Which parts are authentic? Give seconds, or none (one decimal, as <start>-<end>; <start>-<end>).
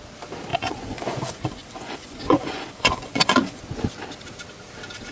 0.0-0.5; 3.6-5.1